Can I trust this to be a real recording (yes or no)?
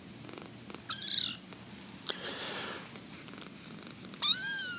yes